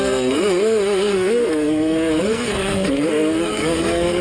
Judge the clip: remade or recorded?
remade